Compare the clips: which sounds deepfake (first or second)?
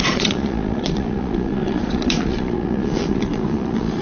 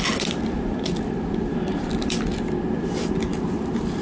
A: first